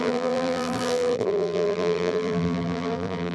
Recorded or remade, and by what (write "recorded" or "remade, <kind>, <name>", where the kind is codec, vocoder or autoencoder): remade, vocoder, BigVGAN v2